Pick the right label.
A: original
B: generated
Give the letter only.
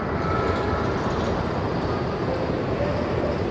A